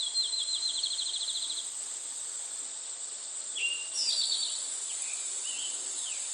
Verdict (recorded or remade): recorded